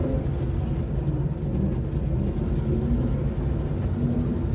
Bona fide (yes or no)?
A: yes